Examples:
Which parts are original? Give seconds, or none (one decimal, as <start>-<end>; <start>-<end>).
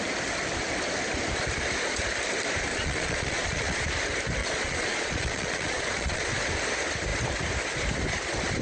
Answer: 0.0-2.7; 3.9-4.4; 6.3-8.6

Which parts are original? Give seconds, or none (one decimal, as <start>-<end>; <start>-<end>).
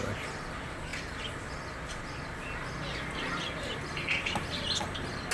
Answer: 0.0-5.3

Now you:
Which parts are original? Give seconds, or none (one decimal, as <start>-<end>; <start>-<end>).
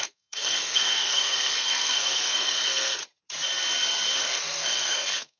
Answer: 3.0-4.2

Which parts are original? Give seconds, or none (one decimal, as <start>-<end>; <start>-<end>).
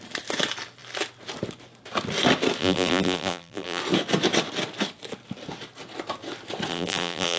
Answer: 0.0-2.6; 3.8-6.7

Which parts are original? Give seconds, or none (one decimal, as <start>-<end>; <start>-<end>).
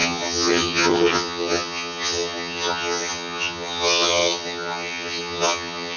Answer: none